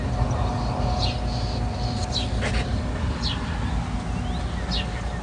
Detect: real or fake real